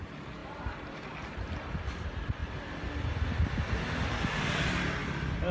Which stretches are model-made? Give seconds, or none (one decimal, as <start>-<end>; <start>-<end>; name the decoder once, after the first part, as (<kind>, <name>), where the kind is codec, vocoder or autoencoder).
0.4-1.5 (vocoder, BigVGAN v2)